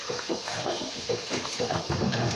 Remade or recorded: remade